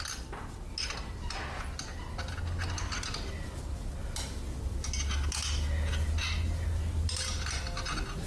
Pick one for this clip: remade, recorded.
recorded